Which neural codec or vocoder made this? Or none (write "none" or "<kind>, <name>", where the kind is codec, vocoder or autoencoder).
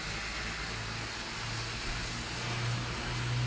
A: none